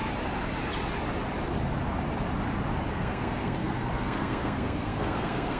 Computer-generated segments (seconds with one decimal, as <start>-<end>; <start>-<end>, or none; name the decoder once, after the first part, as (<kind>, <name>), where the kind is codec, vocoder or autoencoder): 2.9-5.6 (codec, SNAC)